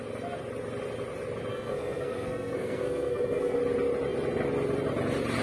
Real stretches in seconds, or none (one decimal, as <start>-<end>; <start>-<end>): 0.0-1.5; 3.6-5.4